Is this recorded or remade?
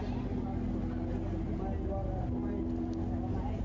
recorded